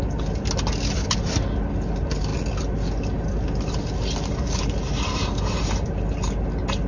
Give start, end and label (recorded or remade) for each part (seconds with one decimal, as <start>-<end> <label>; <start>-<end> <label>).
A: 0.0-6.9 recorded